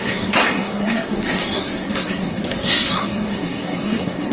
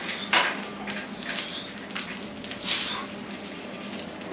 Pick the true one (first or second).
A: second